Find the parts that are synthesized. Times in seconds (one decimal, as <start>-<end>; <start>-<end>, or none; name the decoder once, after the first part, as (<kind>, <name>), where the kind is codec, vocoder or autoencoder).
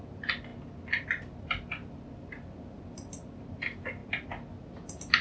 none